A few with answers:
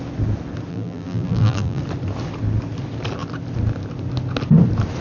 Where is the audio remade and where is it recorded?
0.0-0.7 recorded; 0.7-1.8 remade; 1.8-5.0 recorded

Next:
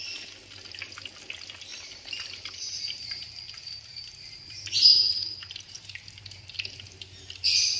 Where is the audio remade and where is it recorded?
0.0-1.7 recorded; 1.7-6.4 remade; 6.4-7.8 recorded

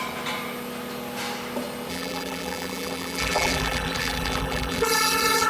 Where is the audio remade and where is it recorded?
0.0-1.9 recorded; 1.9-5.5 remade

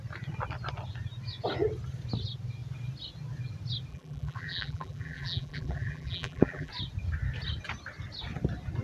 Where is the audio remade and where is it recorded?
0.0-3.9 recorded; 3.9-6.7 remade; 6.7-8.8 recorded

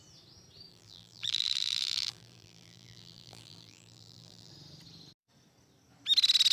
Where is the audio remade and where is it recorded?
0.0-0.7 recorded; 0.7-4.5 remade; 4.5-6.5 recorded